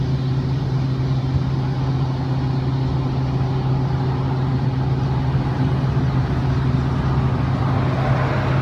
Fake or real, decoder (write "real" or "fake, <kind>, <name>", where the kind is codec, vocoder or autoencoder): real